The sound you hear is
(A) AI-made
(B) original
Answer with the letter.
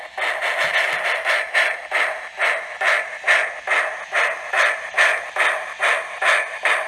B